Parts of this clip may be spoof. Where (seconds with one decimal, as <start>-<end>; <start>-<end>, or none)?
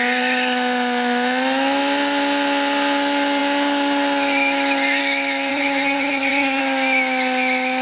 5.5-6.6